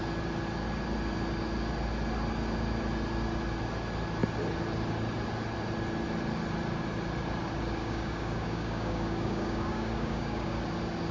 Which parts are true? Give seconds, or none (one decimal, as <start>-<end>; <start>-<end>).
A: 0.0-7.8; 10.6-11.1